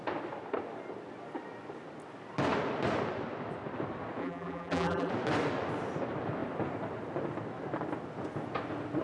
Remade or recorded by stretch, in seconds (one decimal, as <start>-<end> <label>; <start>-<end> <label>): 0.0-4.2 recorded; 4.2-5.1 remade; 5.1-9.0 recorded